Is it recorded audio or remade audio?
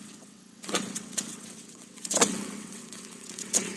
remade